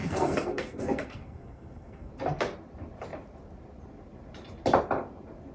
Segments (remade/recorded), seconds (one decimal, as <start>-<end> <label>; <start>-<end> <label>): 0.0-2.1 remade; 2.1-5.5 recorded